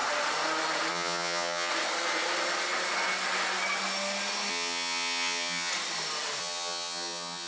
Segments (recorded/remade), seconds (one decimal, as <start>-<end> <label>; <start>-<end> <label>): 0.0-0.9 recorded; 0.9-1.7 remade; 1.7-4.5 recorded; 4.5-5.7 remade; 5.7-6.4 recorded; 6.4-7.5 remade